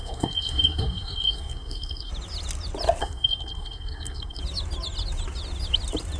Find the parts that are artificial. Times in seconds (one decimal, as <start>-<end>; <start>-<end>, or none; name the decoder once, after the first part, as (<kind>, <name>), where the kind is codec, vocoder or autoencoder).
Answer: 0.0-2.1 (codec, SNAC); 3.0-4.4